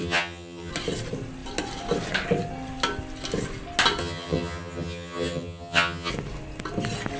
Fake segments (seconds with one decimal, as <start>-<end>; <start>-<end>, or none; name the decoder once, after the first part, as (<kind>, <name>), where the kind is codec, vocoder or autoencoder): 0.0-0.7 (vocoder, HiFi-GAN); 4.0-6.1